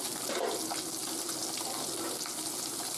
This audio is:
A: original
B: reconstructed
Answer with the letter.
A